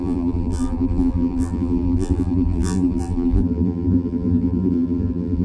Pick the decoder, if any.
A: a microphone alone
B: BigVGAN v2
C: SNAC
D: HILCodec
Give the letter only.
B